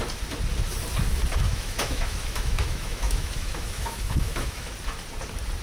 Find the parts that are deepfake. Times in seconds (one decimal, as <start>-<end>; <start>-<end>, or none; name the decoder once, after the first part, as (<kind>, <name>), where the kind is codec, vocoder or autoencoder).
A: 1.3-4.7 (autoencoder, DAC-VAE)